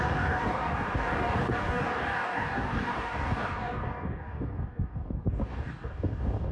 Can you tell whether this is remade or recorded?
remade